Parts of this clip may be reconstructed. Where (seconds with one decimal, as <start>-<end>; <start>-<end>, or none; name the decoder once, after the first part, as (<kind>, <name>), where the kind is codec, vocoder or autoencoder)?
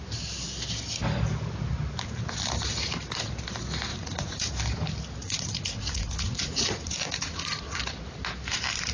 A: 3.9-4.5 (vocoder, Vocos); 5.2-7.8